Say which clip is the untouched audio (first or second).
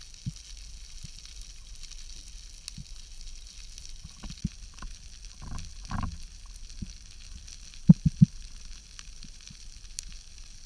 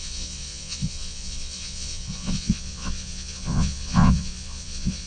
first